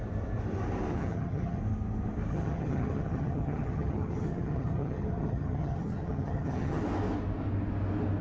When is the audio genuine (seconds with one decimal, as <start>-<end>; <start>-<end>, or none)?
0.0-0.9; 1.6-2.3; 6.8-8.2